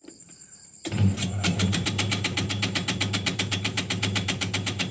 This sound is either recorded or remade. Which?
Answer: remade